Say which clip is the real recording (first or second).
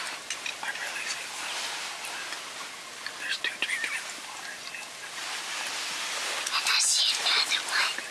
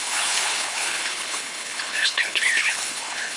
first